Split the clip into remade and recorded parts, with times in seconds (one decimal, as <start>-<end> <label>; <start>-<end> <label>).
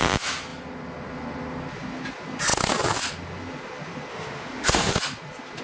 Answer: 0.0-4.1 recorded; 4.1-4.9 remade; 4.9-5.6 recorded